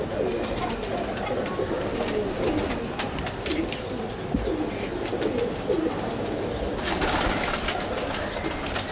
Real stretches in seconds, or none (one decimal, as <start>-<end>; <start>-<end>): 0.0-8.9